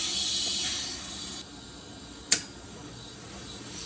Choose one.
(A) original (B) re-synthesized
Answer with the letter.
A